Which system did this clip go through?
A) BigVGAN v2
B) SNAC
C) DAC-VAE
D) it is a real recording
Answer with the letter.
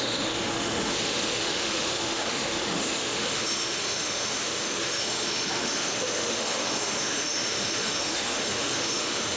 C